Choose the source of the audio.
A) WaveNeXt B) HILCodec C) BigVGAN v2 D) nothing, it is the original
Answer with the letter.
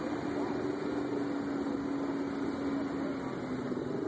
D